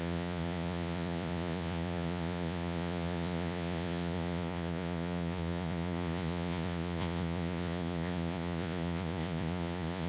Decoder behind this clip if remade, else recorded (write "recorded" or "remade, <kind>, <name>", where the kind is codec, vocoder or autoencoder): remade, vocoder, Vocos